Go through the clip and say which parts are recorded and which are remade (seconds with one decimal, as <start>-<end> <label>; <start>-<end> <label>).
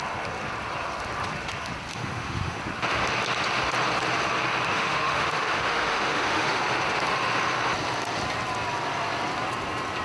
0.0-1.9 recorded; 1.9-2.6 remade; 2.6-4.7 recorded; 4.7-6.6 remade; 6.6-10.0 recorded